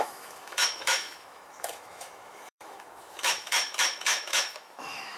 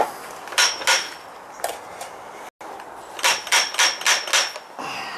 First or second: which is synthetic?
first